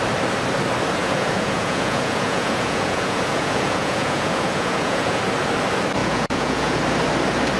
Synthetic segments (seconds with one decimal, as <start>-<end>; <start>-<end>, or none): 1.0-5.2; 6.0-6.8